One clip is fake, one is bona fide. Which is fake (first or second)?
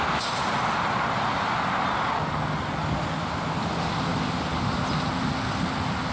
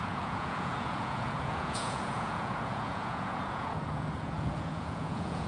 second